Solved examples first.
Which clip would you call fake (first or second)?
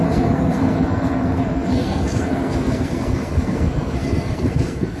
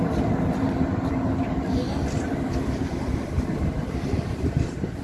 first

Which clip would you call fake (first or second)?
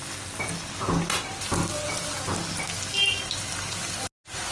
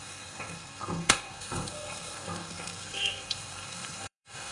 second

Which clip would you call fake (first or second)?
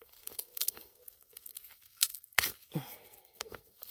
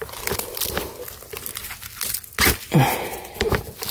first